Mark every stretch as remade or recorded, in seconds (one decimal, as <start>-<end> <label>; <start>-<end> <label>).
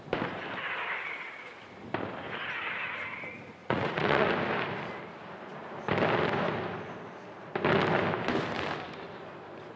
0.0-3.6 recorded; 3.6-4.3 remade; 4.3-9.8 recorded